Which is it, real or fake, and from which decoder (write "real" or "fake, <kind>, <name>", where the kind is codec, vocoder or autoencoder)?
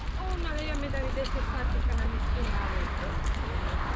real